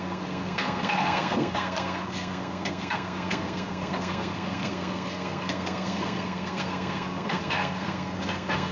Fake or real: fake